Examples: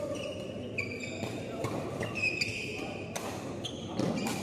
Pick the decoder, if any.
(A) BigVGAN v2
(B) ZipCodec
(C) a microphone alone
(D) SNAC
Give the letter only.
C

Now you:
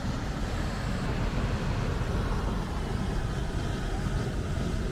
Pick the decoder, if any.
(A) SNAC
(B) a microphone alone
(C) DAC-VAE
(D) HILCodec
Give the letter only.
B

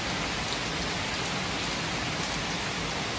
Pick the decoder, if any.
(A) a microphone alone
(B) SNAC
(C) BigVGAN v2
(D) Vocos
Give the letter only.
A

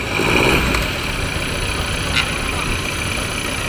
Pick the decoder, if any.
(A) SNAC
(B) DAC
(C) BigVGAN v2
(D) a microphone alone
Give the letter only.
D